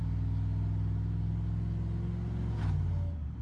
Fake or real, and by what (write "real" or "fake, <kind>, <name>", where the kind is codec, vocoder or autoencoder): real